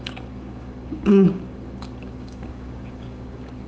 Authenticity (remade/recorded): remade